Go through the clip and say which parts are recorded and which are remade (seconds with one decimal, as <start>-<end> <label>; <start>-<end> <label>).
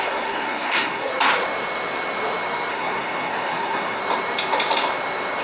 0.0-1.1 remade; 1.1-2.7 recorded; 2.7-4.0 remade; 4.0-5.4 recorded